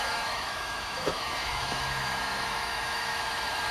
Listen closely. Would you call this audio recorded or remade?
remade